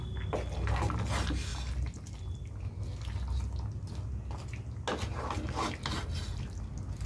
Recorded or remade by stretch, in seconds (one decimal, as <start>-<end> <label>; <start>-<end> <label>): 0.0-7.1 recorded